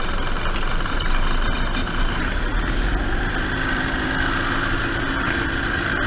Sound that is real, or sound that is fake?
real